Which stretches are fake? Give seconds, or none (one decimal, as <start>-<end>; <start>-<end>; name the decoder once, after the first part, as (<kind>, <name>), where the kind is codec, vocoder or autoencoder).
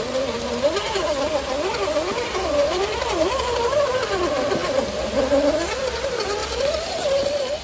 1.7-2.3 (vocoder, BigVGAN v2); 6.4-7.6